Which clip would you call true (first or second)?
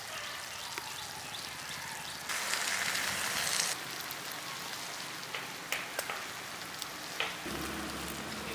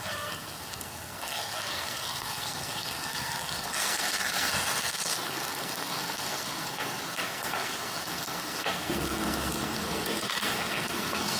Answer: first